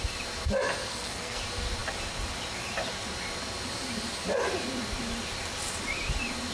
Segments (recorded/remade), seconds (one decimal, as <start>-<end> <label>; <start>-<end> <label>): 0.0-0.9 recorded; 0.9-1.4 remade; 1.4-6.5 recorded